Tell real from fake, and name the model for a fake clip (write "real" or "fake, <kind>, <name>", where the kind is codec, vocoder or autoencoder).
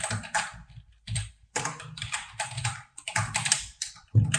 fake, vocoder, BigVGAN v2